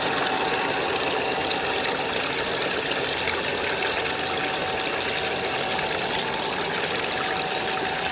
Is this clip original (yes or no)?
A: yes